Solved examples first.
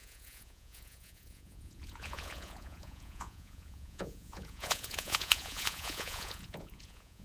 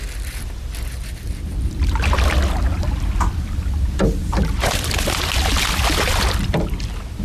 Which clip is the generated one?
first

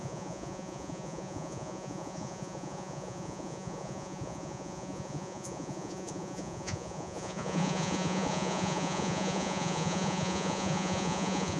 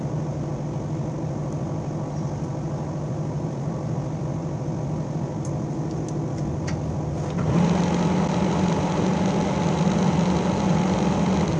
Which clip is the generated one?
first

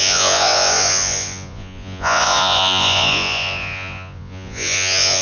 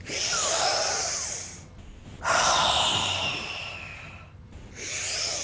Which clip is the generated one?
first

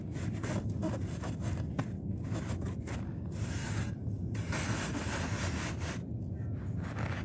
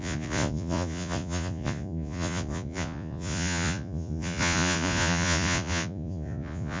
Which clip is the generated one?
second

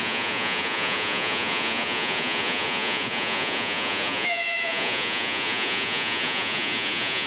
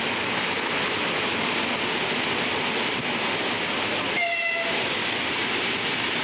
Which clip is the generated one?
first